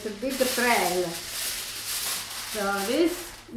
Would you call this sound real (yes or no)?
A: yes